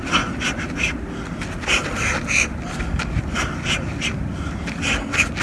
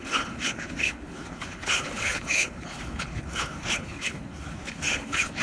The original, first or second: first